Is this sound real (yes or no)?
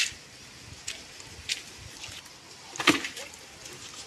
yes